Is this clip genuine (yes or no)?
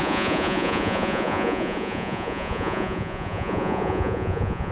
no